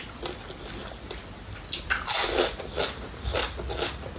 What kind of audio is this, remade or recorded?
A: recorded